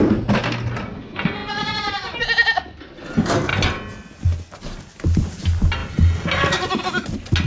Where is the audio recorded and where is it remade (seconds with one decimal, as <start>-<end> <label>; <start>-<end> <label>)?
0.0-7.5 recorded